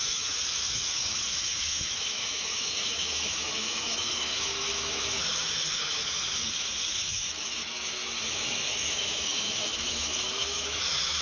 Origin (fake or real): fake